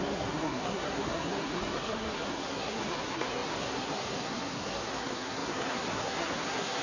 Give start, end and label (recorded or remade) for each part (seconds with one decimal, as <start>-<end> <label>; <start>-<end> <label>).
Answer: 0.0-6.8 remade